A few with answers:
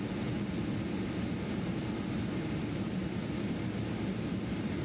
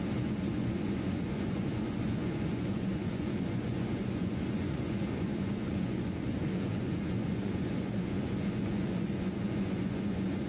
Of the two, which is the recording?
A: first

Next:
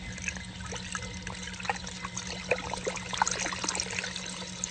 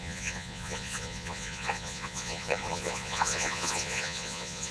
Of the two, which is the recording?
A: first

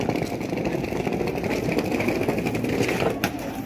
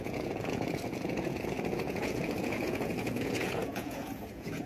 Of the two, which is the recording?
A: first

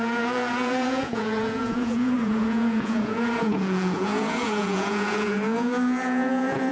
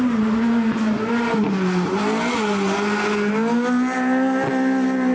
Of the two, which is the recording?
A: second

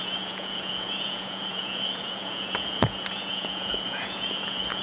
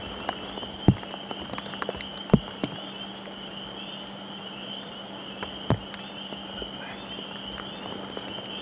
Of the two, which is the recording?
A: second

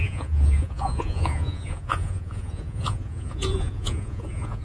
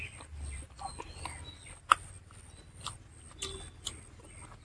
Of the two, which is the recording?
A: second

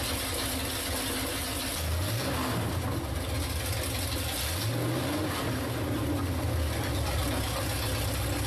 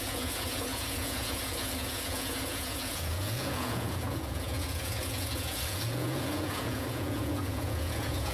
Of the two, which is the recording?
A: first